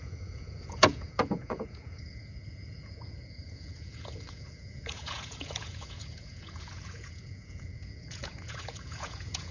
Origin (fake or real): fake